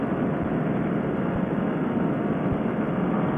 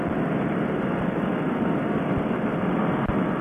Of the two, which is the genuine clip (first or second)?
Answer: first